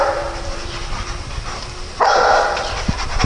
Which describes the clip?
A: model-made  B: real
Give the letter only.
B